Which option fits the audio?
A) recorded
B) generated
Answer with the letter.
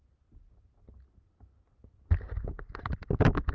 A